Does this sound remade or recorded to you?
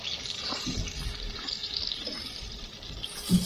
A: recorded